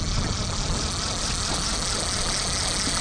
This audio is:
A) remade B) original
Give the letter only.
B